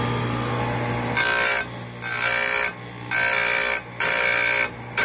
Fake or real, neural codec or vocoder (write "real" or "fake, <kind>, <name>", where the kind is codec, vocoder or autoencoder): real